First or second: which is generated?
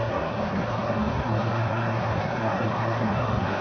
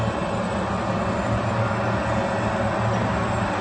first